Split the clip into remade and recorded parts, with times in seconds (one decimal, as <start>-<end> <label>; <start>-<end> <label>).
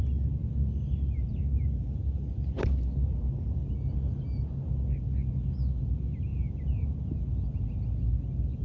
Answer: 0.0-8.6 recorded